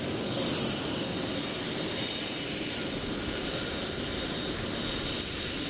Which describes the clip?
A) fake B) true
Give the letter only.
B